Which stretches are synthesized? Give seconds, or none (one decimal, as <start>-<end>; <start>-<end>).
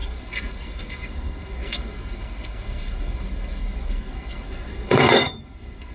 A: 0.0-5.9